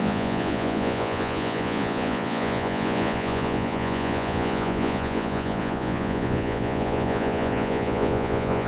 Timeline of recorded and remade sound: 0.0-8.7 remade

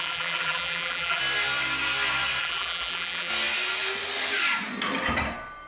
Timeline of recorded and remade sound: 0.0-1.2 remade; 1.2-2.4 recorded; 2.4-3.3 remade; 3.3-5.7 recorded

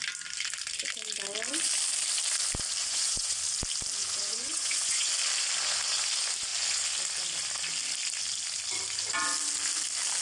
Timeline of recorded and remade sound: 0.0-2.8 recorded; 2.8-3.4 remade; 3.4-4.0 recorded; 4.0-5.1 remade; 5.1-10.2 recorded